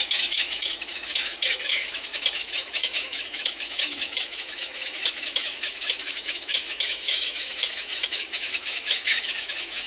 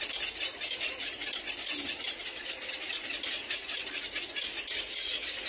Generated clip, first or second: first